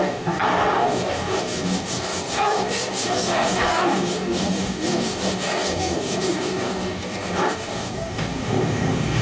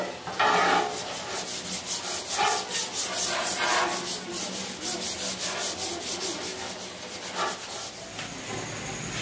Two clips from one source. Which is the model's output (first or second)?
first